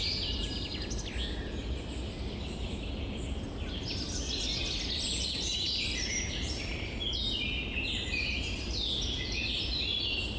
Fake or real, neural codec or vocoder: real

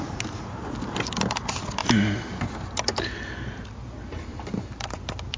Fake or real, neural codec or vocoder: real